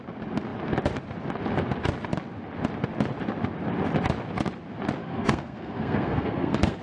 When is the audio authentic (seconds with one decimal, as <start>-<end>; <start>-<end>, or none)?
0.0-5.0